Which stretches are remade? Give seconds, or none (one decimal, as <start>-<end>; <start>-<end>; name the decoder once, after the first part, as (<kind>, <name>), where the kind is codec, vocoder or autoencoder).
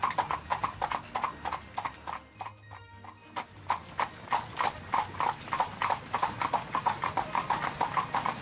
none